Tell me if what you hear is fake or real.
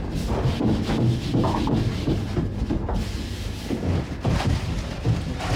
real